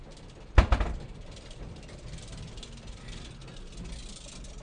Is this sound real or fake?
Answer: real